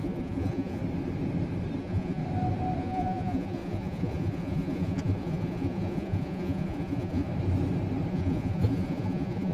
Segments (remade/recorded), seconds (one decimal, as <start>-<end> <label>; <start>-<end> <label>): 0.0-0.8 remade; 0.8-1.8 recorded; 1.8-2.2 remade; 2.2-2.8 recorded; 2.8-7.3 remade; 7.3-8.1 recorded; 8.1-9.5 remade